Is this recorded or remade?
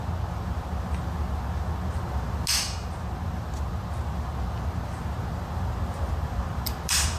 recorded